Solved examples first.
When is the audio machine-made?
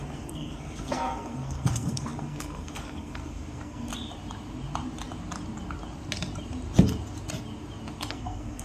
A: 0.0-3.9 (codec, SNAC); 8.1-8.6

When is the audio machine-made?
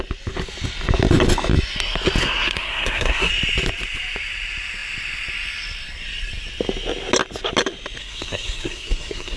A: 2.2-3.3 (codec, SNAC); 8.0-9.4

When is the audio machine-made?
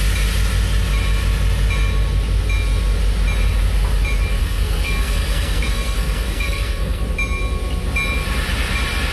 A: 4.4-7.0 (codec, SNAC)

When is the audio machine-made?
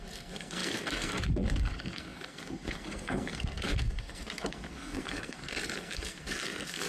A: 0.0-6.9 (codec, SNAC)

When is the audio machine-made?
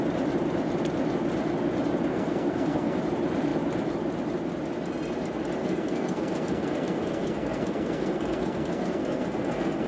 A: 2.1-3.0 (codec, SNAC); 5.6-9.9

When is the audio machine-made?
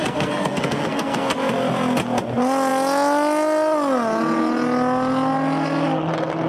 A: 0.0-1.3 (codec, SNAC)